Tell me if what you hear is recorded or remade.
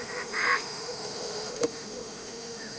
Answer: remade